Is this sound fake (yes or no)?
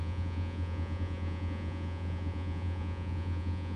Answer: yes